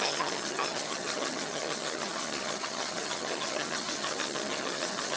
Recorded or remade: remade